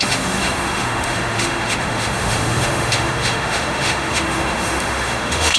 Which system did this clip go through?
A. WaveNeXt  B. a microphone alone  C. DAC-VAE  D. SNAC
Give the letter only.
C